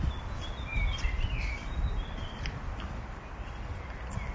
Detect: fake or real real